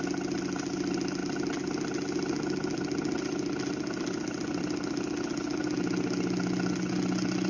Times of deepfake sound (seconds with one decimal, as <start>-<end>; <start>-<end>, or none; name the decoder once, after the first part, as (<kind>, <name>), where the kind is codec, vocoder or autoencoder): none